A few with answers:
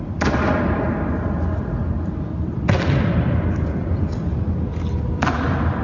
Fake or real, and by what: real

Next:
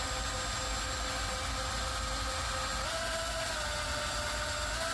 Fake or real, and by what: real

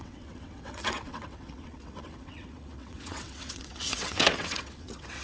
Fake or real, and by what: fake, vocoder, WaveNeXt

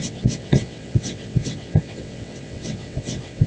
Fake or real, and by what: fake, vocoder, WaveNeXt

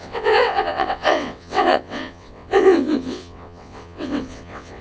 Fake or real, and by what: fake, vocoder, WaveNeXt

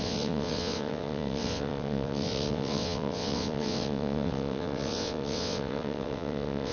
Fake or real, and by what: fake, vocoder, WaveNeXt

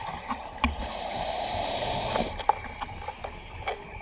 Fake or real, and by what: real